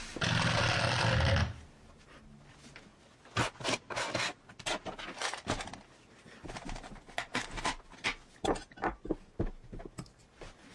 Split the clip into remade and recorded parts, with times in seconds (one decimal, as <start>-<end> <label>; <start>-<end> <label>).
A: 0.0-10.7 recorded